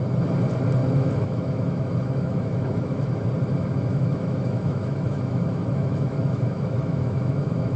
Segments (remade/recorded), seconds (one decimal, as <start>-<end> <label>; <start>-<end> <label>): 0.0-0.8 recorded; 0.8-3.3 remade; 3.3-3.9 recorded; 3.9-7.8 remade